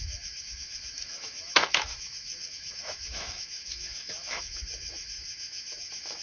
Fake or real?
fake